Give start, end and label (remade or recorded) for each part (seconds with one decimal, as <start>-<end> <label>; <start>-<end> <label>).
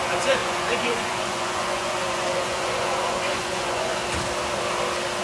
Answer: 0.0-4.0 remade; 4.0-5.2 recorded